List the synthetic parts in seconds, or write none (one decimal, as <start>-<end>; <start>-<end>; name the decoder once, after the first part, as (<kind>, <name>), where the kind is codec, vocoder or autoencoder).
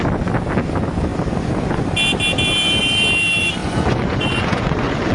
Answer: 3.6-5.1 (vocoder, Vocos)